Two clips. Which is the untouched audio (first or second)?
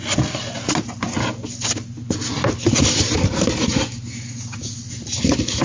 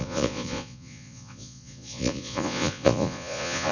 first